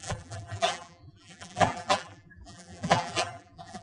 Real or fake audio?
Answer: fake